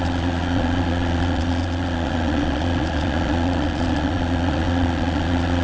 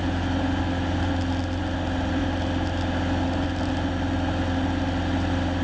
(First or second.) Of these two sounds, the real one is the second